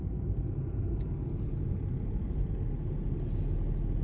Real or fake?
real